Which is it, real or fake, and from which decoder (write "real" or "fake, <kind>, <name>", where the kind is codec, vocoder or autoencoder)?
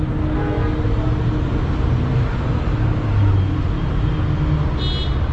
real